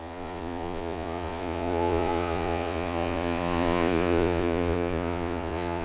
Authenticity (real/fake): fake